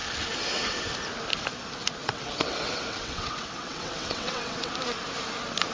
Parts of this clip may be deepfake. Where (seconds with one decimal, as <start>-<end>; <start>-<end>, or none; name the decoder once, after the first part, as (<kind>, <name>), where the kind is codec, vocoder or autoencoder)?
2.0-4.7 (vocoder, WaveNeXt)